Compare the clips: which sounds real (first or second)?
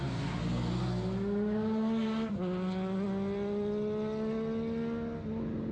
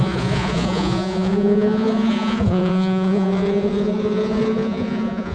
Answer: first